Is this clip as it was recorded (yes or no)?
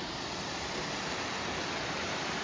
yes